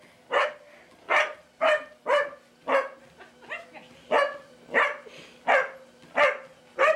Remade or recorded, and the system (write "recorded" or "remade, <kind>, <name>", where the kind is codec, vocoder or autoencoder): recorded